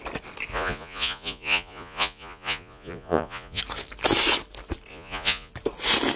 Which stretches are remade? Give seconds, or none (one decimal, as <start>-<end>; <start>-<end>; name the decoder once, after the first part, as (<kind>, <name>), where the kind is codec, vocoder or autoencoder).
0.5-3.6 (vocoder, Vocos); 4.9-5.5

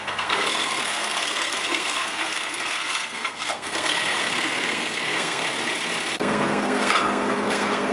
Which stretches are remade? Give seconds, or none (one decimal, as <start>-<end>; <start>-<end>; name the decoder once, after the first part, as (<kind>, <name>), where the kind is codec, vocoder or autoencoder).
0.0-5.4 (codec, SNAC); 6.2-7.9

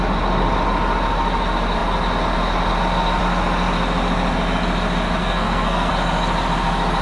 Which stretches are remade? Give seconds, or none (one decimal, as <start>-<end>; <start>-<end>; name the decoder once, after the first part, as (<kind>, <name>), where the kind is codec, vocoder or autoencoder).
5.2-5.9 (codec, SNAC)

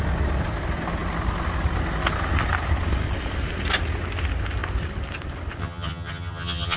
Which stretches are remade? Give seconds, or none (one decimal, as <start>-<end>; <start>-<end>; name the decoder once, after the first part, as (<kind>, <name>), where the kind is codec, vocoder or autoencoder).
5.6-6.8 (vocoder, HiFi-GAN)

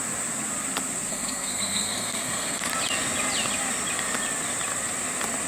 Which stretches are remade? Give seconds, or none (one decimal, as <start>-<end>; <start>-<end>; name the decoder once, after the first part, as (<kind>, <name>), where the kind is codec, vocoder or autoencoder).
1.1-2.6 (codec, SNAC)

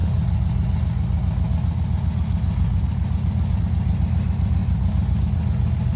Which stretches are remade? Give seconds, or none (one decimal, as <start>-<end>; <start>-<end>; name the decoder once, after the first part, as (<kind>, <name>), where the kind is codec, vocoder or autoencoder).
none

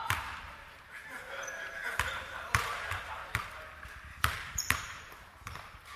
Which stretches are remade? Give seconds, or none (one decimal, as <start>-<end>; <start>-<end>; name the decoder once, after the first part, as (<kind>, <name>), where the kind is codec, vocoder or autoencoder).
0.0-3.2 (vocoder, BigVGAN v2); 4.4-6.0

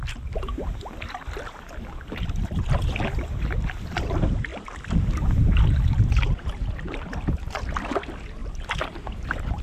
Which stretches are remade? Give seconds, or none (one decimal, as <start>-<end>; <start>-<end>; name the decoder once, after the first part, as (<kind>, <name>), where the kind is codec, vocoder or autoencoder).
8.4-9.6 (vocoder, BigVGAN v2)